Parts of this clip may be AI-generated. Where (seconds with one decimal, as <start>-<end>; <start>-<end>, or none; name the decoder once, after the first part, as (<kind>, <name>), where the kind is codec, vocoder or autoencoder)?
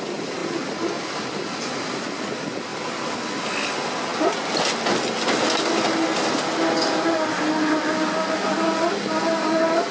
none